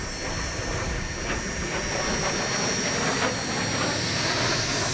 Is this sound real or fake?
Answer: real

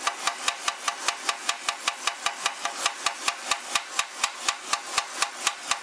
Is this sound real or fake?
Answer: real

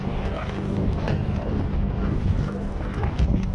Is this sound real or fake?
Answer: fake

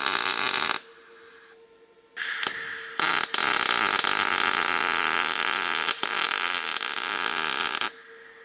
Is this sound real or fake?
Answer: real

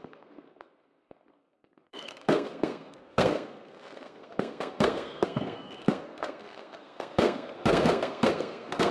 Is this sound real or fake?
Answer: fake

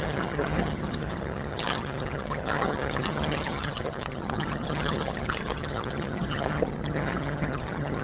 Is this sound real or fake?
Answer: fake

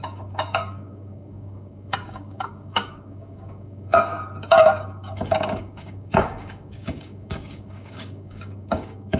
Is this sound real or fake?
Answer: fake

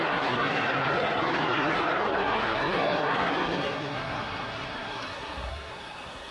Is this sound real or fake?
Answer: fake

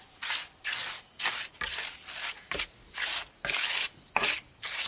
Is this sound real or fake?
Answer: real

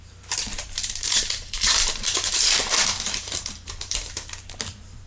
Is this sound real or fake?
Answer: fake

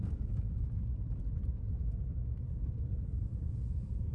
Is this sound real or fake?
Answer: fake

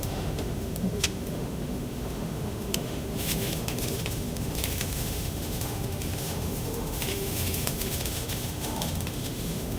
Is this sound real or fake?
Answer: fake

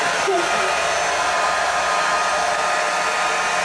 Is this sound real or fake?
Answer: real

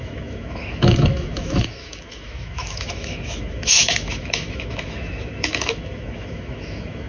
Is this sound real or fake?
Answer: fake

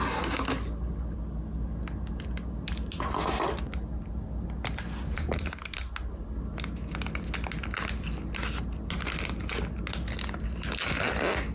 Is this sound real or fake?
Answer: real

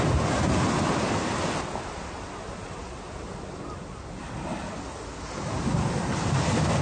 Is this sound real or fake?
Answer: real